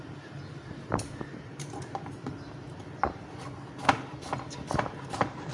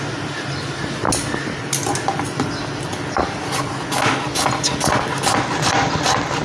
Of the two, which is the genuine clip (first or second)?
second